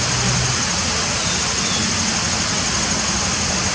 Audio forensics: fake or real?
real